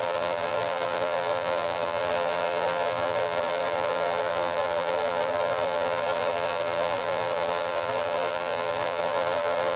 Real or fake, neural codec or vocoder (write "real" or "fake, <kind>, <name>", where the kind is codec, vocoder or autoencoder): fake, vocoder, BigVGAN v2